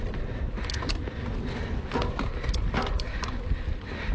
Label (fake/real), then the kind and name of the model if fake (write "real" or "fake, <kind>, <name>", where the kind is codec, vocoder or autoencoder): real